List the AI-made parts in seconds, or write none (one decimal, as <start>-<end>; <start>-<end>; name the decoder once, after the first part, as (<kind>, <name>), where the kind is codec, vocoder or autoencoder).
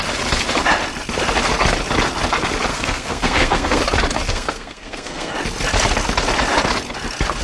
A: 2.7-3.8 (codec, SNAC); 4.3-5.3